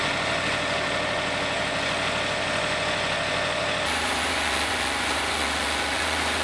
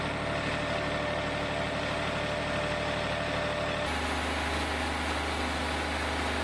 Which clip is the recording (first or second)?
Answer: second